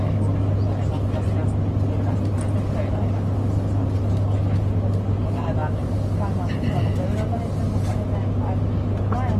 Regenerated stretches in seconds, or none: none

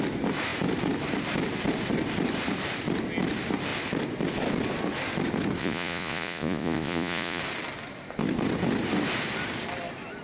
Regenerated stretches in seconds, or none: 5.6-7.4 (vocoder, Vocos)

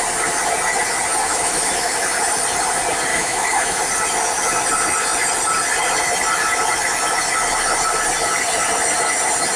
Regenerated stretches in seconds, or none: 1.3-1.9 (autoencoder, DAC-VAE); 3.1-3.8